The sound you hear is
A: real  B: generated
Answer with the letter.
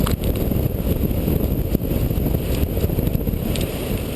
A